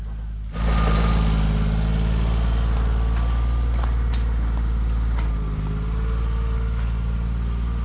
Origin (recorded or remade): recorded